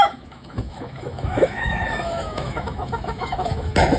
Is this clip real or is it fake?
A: fake